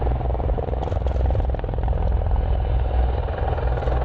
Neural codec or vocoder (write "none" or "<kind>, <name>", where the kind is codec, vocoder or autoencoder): none